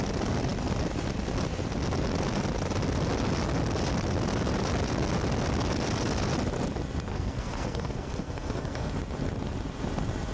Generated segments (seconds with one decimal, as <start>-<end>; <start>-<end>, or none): 7.1-8.9